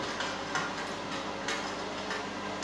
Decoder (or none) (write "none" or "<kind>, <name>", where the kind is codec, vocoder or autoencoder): none